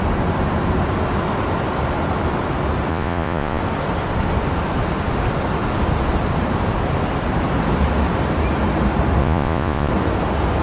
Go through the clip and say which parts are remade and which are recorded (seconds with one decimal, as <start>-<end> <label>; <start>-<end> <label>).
0.0-2.9 recorded; 2.9-3.6 remade; 3.6-9.2 recorded; 9.2-9.9 remade; 9.9-10.6 recorded